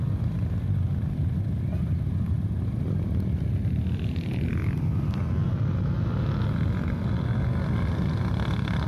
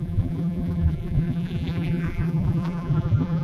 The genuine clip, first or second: first